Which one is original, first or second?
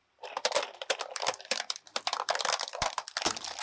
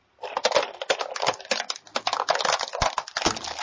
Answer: second